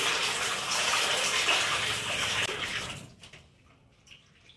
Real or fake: real